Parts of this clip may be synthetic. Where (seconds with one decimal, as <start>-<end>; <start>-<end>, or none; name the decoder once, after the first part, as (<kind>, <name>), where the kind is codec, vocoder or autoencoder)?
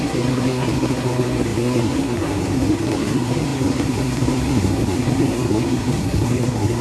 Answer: 0.0-6.8 (codec, SNAC)